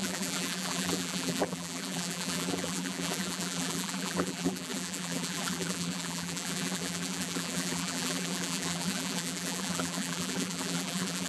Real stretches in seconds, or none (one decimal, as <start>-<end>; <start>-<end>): none